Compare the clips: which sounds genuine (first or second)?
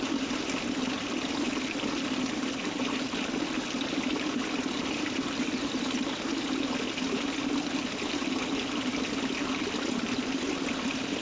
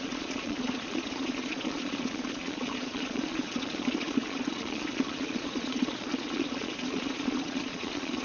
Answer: first